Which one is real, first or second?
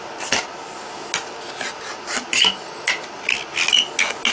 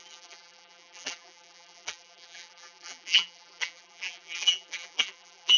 first